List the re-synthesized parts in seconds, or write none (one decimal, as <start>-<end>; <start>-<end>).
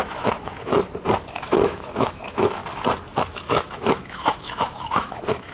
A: 0.0-0.7; 1.3-2.6; 3.1-5.5